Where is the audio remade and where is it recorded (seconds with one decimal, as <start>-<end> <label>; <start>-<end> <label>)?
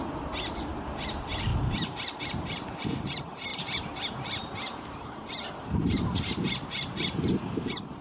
0.0-1.5 remade; 1.5-2.2 recorded; 2.2-8.0 remade